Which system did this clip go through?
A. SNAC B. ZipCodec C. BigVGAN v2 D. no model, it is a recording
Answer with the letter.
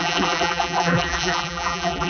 C